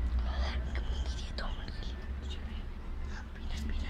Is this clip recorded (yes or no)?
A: yes